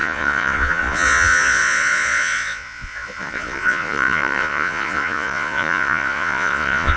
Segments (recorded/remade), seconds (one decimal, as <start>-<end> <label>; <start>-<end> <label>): 0.0-7.0 remade